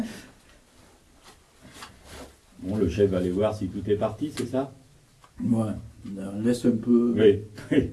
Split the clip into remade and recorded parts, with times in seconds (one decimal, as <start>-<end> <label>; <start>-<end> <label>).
0.0-7.9 recorded